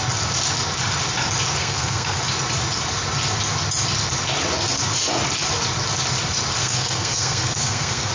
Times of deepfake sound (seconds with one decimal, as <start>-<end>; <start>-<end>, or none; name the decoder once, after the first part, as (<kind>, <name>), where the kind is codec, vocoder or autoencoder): 1.6-2.2 (codec, SNAC); 6.6-8.1